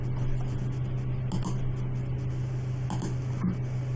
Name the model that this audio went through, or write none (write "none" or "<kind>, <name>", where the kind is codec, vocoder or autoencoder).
none